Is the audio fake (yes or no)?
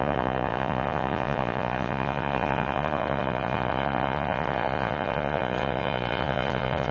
yes